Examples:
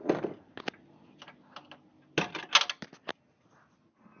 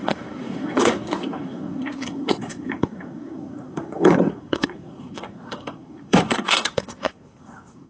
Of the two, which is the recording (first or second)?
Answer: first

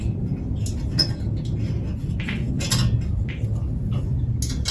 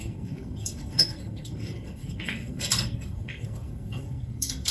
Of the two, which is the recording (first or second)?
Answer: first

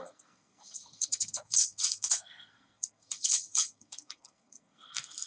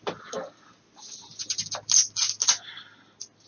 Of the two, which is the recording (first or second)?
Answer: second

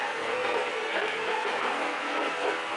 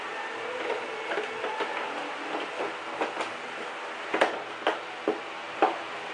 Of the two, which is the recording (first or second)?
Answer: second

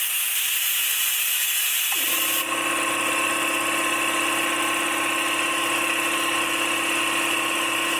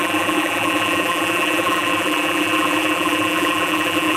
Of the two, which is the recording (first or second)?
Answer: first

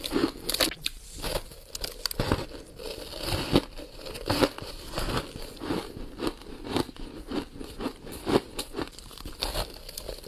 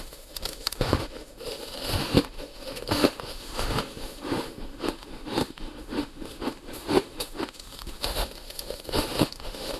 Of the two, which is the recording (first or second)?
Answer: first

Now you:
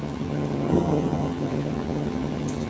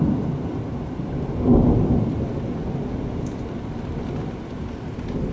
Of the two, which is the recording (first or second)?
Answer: second